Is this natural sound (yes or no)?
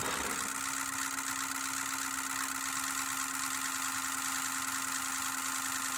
yes